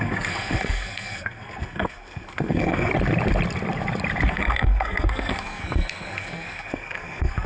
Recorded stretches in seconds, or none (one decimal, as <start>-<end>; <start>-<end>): 2.9-4.3